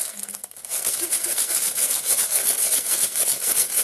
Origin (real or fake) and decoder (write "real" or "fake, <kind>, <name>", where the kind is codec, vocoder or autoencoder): fake, codec, SNAC